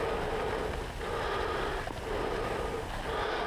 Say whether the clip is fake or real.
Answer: real